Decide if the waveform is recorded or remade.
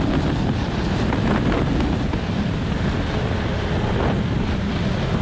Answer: recorded